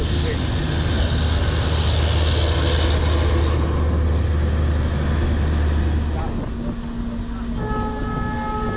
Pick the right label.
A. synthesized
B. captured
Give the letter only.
B